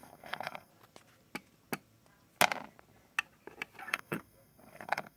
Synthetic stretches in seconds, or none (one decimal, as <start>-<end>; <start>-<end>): 0.0-0.7; 3.8-5.2